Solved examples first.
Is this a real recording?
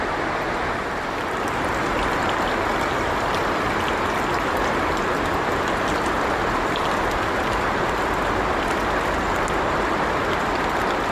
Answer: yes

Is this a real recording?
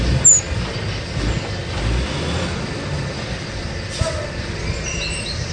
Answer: yes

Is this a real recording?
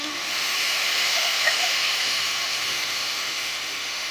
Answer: no